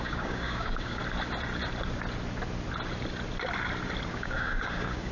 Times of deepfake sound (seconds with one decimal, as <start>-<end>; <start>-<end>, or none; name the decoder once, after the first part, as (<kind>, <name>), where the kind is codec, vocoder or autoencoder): 0.0-1.0 (codec, DAC); 4.1-5.1